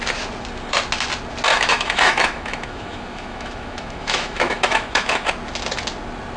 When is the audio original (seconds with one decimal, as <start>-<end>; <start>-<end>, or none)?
0.0-1.5; 5.3-6.4